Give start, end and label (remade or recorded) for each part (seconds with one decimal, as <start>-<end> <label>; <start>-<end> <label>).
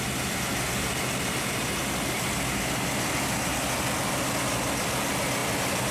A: 0.0-5.9 recorded